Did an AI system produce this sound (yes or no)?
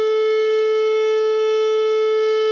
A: no